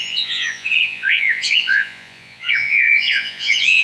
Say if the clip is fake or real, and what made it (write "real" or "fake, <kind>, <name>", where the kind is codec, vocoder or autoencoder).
fake, vocoder, Vocos